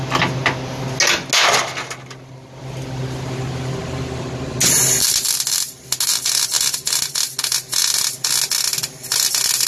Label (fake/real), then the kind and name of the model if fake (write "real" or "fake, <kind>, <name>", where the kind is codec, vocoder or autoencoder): real